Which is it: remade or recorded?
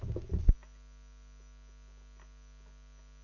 recorded